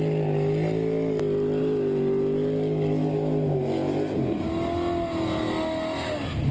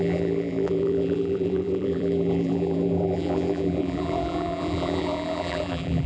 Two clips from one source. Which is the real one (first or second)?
first